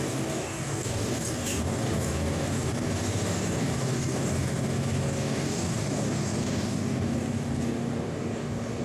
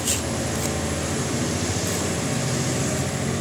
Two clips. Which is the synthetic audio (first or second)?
first